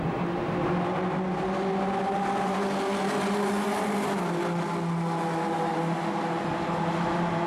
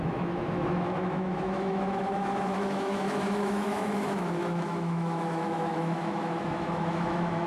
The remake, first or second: second